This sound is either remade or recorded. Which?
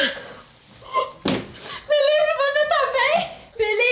recorded